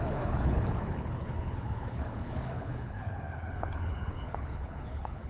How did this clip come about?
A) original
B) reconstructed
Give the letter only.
B